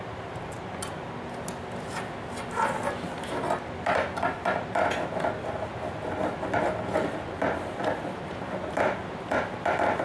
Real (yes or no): yes